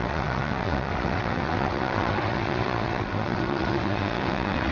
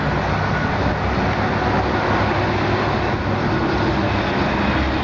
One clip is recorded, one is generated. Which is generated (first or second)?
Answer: first